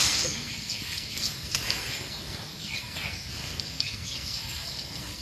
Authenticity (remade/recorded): remade